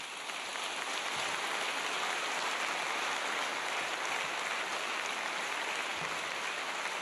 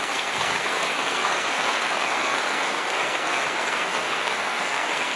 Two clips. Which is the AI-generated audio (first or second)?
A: second